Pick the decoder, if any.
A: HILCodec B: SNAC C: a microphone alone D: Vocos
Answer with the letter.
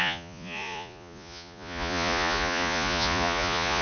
D